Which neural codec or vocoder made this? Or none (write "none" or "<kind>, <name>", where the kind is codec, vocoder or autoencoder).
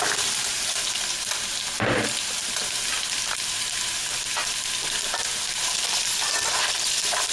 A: none